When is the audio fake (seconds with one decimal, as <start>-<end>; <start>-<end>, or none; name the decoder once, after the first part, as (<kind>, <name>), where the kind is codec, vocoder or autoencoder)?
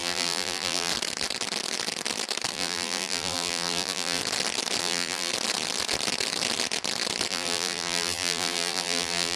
0.0-0.9 (vocoder, BigVGAN v2); 2.5-4.2; 4.8-5.3; 7.3-9.4